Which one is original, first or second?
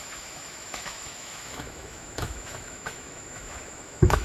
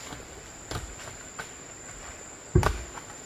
second